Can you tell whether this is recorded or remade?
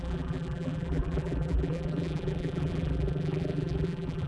remade